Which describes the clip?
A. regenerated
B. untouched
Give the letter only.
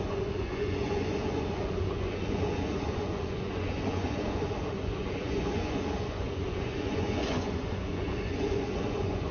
A